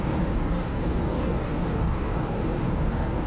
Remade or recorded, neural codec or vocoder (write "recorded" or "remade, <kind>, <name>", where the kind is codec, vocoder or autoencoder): remade, codec, DAC